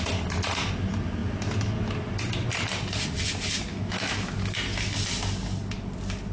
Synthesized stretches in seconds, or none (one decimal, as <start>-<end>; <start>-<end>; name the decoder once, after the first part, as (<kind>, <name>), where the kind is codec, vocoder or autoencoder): 3.7-4.5 (autoencoder, DAC-VAE)